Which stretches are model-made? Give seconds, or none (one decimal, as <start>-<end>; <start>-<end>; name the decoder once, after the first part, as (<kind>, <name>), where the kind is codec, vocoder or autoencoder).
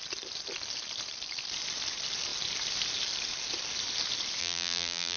4.4-5.2 (vocoder, BigVGAN v2)